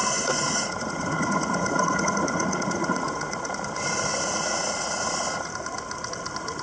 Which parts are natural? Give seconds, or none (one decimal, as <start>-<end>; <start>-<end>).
3.5-4.1; 5.5-6.6